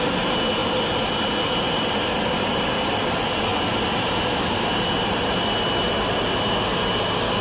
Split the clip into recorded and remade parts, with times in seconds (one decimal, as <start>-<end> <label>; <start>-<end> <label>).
0.0-7.4 recorded